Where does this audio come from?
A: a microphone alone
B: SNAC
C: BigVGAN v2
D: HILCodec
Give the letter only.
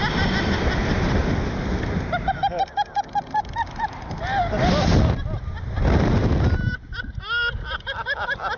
A